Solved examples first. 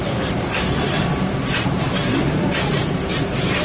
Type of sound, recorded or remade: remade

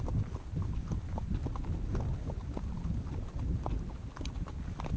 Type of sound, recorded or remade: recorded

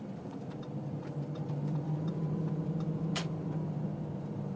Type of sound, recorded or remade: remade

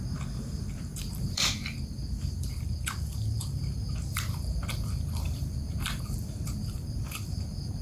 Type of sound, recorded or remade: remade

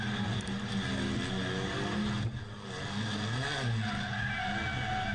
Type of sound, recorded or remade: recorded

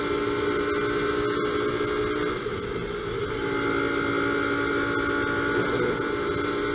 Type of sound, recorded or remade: recorded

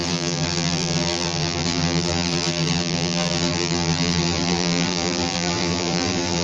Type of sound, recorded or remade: remade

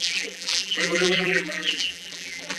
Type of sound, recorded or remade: remade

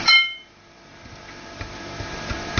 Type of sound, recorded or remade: remade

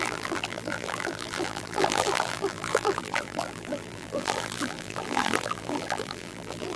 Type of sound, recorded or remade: remade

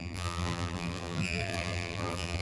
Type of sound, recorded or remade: remade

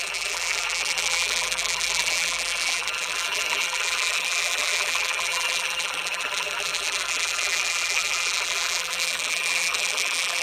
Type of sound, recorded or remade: remade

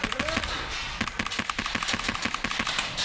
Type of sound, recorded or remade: recorded